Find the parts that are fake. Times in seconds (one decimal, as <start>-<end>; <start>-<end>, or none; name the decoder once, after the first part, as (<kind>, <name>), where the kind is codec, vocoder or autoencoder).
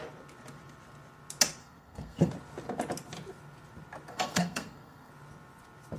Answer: 1.6-2.3 (codec, SNAC); 4.1-5.1